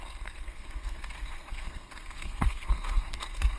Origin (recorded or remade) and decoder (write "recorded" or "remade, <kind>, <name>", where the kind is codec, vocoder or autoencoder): remade, codec, SNAC